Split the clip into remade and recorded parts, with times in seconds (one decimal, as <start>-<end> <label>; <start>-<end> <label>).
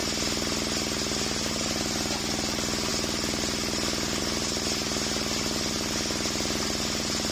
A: 0.0-7.3 recorded